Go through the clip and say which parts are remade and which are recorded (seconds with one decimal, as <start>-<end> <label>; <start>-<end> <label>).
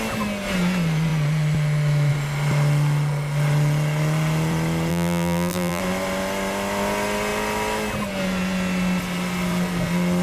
0.0-4.9 recorded; 4.9-5.8 remade; 5.8-10.2 recorded